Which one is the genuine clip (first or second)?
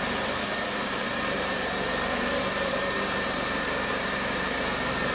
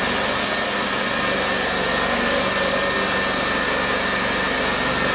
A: second